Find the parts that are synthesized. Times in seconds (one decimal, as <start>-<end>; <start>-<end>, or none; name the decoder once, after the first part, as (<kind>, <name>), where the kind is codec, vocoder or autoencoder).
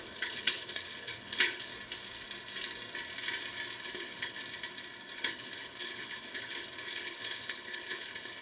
0.0-1.7 (codec, HILCodec); 3.8-4.4; 5.2-8.4